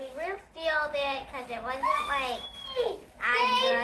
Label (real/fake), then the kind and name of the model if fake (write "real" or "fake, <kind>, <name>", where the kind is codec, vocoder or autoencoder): real